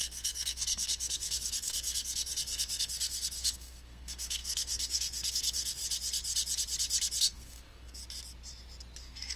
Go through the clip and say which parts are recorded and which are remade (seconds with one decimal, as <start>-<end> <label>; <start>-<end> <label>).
0.0-5.8 remade; 5.8-7.2 recorded; 7.2-8.0 remade; 8.0-9.0 recorded; 9.0-9.4 remade

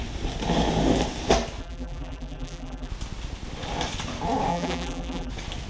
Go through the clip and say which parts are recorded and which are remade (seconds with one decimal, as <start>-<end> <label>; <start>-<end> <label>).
0.0-1.6 recorded; 1.6-2.9 remade; 2.9-4.5 recorded; 4.5-5.3 remade; 5.3-5.7 recorded

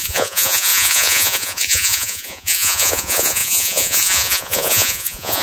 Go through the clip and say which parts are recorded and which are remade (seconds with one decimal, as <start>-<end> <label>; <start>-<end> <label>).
0.0-5.4 remade

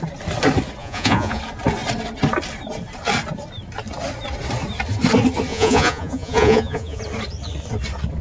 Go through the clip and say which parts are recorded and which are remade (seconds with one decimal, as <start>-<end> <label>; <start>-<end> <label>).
0.0-0.8 recorded; 0.8-1.4 remade; 1.4-5.5 recorded; 5.5-7.0 remade; 7.0-8.2 recorded

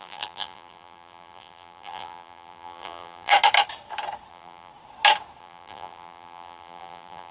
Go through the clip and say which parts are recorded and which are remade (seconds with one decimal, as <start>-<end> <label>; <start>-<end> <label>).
0.0-3.3 remade; 3.3-4.3 recorded; 4.3-4.7 remade; 4.7-5.4 recorded; 5.4-7.3 remade

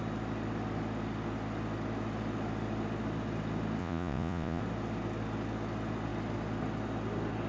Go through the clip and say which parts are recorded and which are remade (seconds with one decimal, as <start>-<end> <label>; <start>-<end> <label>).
0.0-3.8 recorded; 3.8-4.6 remade; 4.6-7.5 recorded

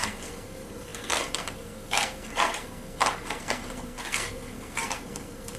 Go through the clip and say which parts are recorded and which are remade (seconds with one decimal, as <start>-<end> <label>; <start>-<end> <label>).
0.0-5.6 remade